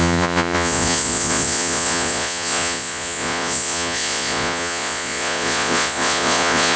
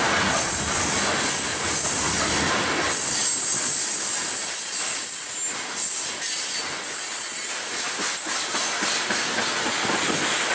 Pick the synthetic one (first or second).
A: first